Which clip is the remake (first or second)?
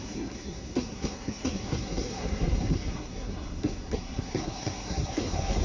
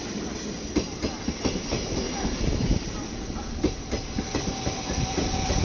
first